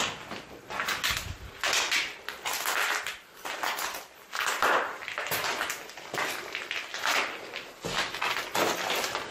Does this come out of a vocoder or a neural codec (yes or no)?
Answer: no